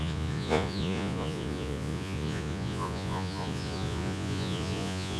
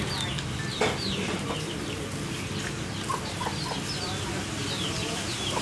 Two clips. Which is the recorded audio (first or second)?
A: second